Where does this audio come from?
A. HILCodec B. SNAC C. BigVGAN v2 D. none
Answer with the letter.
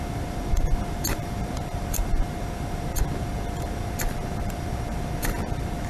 C